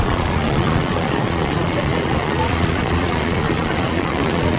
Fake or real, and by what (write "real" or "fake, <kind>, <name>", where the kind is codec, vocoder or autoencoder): fake, vocoder, Vocos